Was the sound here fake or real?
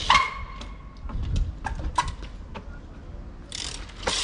real